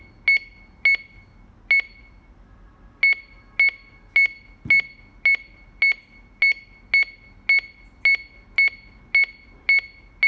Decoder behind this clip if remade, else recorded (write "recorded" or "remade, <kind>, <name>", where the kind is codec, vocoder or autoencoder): recorded